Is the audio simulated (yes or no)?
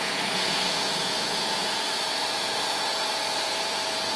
yes